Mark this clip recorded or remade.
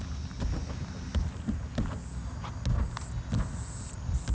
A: recorded